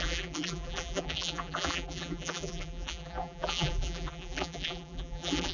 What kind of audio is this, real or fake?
fake